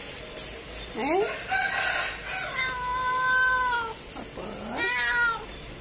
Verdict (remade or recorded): recorded